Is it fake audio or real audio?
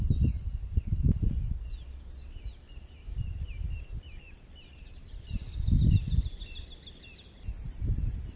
real